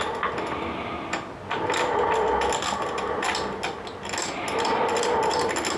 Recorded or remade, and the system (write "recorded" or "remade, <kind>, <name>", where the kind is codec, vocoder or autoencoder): recorded